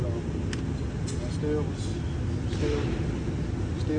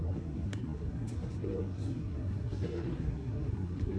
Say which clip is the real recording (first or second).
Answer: first